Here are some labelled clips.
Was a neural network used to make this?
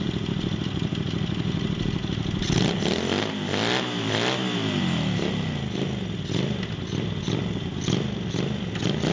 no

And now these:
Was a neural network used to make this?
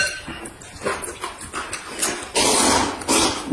no